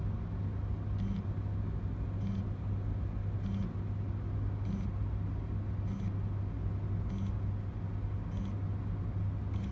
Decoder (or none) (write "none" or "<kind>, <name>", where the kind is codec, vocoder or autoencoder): none